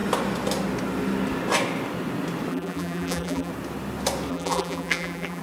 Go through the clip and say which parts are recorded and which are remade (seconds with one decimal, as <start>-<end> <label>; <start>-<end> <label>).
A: 0.0-2.5 recorded; 2.5-3.5 remade; 3.5-4.3 recorded; 4.3-5.4 remade